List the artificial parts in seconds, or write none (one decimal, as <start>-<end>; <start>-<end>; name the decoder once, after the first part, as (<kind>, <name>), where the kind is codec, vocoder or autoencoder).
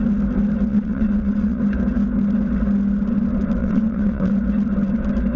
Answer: 0.7-1.6 (vocoder, WaveNeXt); 3.6-4.3